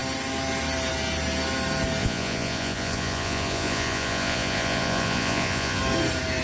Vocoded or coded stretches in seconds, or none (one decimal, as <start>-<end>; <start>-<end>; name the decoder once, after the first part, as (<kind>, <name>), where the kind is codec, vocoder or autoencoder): 2.0-5.8 (vocoder, Vocos)